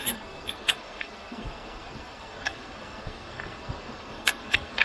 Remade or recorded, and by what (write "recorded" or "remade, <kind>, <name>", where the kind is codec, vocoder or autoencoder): remade, codec, SNAC